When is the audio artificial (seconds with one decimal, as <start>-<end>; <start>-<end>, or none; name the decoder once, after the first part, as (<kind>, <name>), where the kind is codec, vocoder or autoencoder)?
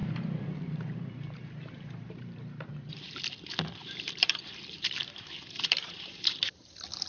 0.0-2.9 (vocoder, BigVGAN v2); 3.8-6.4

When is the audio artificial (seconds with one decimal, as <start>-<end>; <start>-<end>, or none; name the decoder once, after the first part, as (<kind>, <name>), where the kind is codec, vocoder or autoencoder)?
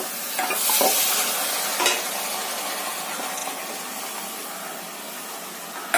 3.4-4.3 (vocoder, BigVGAN v2)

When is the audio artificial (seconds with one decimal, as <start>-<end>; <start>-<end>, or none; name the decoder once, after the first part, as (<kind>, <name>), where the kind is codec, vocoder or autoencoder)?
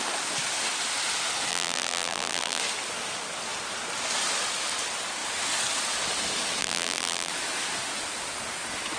1.5-2.6 (vocoder, BigVGAN v2); 6.6-7.3